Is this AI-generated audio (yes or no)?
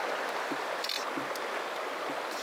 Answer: no